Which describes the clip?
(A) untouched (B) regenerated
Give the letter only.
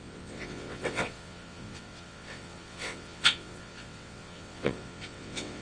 B